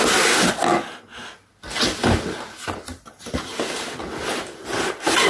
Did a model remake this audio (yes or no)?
no